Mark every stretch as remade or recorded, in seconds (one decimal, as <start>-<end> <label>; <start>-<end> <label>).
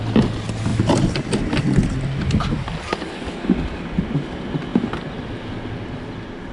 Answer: 0.0-6.5 recorded